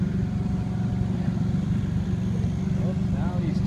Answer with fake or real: real